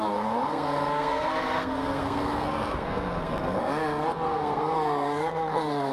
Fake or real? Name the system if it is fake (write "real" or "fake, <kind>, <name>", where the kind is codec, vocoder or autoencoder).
fake, codec, SNAC